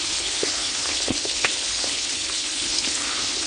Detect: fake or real fake